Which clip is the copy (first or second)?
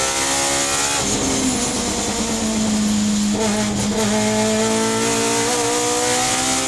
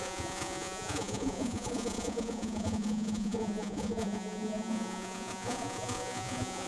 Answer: second